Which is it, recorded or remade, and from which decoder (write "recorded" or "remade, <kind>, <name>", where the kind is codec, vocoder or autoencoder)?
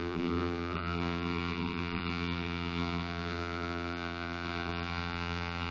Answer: remade, vocoder, BigVGAN v2